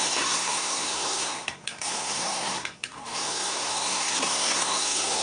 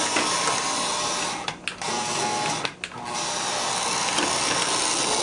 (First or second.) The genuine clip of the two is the second